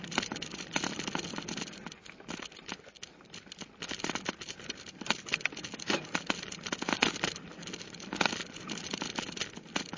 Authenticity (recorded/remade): recorded